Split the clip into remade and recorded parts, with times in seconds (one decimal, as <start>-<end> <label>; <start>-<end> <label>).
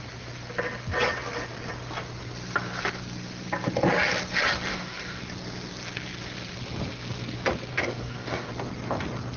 0.0-4.7 recorded; 4.7-5.2 remade; 5.2-7.7 recorded; 7.7-8.5 remade; 8.5-9.4 recorded